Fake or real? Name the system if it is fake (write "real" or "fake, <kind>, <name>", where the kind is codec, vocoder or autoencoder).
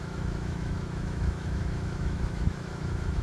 fake, autoencoder, DAC-VAE